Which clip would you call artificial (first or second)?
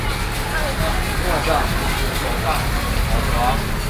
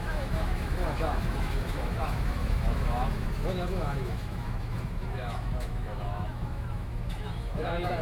second